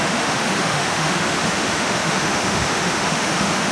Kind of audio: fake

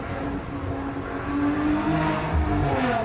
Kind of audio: real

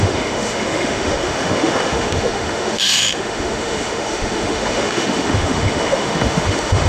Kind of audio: fake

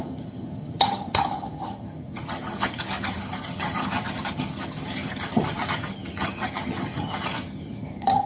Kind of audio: fake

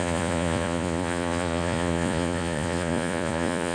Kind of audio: fake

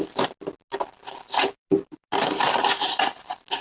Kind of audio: real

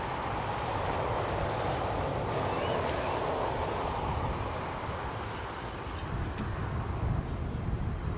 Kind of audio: real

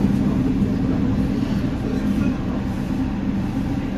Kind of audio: real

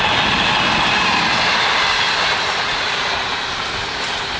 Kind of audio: real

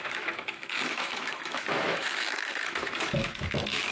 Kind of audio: fake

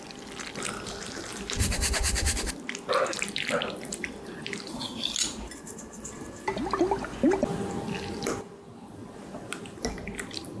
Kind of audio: real